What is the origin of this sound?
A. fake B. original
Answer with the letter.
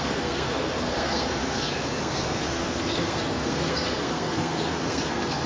A